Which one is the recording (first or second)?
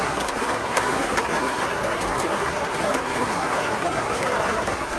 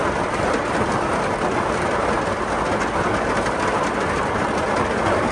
second